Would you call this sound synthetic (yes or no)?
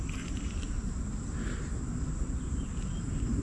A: no